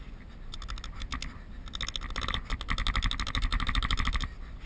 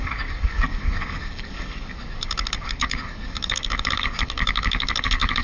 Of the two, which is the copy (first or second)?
second